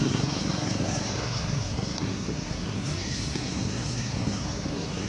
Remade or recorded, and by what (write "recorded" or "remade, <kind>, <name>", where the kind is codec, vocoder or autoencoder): remade, codec, SNAC